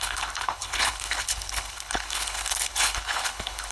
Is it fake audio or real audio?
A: fake